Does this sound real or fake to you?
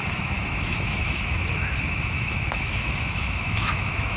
fake